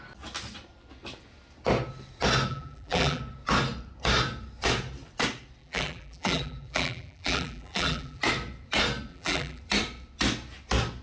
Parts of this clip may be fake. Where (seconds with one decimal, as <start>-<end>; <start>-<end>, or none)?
2.5-3.2; 5.6-8.2; 9.1-9.6